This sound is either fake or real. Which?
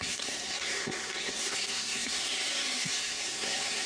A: fake